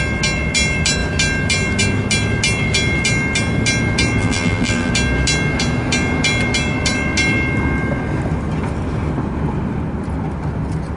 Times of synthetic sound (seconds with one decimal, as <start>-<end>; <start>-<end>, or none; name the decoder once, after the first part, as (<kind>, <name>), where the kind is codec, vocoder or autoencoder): 4.2-4.9 (vocoder, BigVGAN v2)